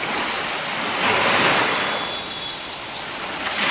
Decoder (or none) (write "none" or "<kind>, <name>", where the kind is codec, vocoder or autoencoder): none